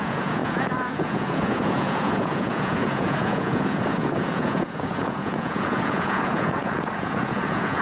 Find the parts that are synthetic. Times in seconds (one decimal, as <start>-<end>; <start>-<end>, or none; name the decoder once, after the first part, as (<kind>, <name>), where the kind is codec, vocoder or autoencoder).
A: 0.0-7.8 (vocoder, Vocos)